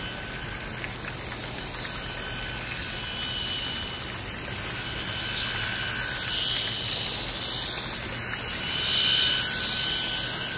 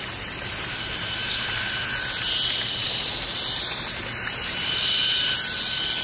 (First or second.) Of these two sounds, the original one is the first